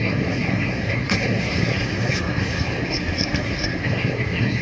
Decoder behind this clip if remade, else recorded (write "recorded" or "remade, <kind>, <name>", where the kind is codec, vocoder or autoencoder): remade, codec, SNAC